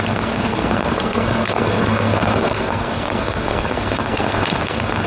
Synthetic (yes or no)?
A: yes